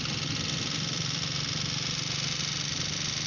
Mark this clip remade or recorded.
recorded